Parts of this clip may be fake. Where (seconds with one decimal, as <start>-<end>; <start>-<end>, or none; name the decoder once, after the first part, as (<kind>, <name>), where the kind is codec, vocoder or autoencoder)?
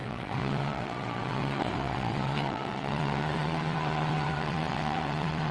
0.0-5.5 (vocoder, WaveNeXt)